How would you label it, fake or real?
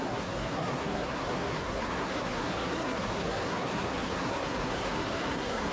fake